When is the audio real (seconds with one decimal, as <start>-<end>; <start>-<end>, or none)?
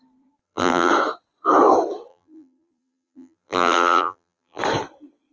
0.0-0.4; 0.9-2.1; 4.6-5.3